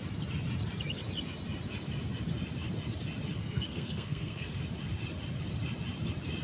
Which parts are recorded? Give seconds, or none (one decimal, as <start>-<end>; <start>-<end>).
0.0-3.4; 4.6-6.4